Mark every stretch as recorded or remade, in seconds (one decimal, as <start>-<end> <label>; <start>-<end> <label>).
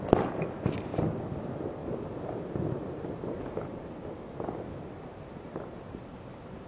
0.0-6.7 recorded